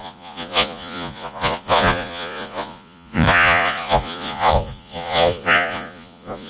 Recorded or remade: remade